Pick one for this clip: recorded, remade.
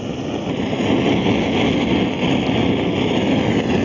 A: recorded